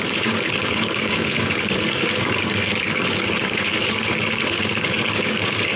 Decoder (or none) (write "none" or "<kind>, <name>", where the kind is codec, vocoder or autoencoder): codec, DAC